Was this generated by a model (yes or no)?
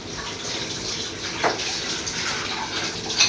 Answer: no